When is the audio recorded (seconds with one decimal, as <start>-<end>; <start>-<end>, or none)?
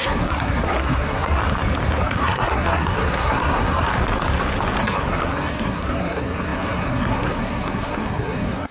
1.4-2.0; 3.9-4.8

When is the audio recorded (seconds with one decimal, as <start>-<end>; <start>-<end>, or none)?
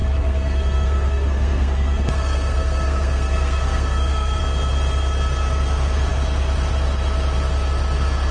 4.4-8.3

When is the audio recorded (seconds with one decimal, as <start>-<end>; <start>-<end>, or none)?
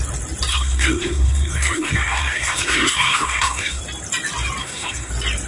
0.0-0.5; 3.8-4.6; 5.1-5.5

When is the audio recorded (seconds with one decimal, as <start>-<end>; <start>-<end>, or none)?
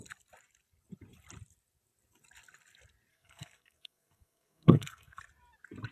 0.0-3.1; 5.2-5.9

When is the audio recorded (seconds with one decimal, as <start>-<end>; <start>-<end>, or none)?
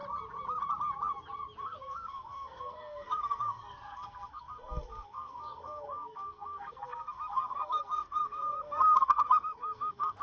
0.0-1.6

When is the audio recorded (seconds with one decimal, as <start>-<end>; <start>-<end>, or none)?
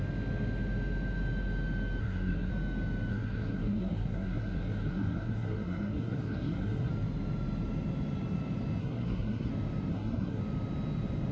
0.0-2.0; 2.5-3.1; 6.9-8.8; 9.5-9.9; 10.4-11.3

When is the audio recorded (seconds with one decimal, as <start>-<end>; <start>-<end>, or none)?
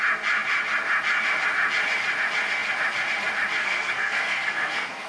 0.0-3.6